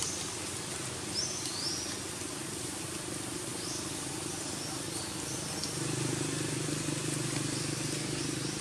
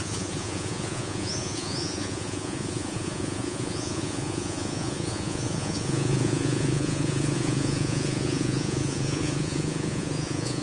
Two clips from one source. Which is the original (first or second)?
first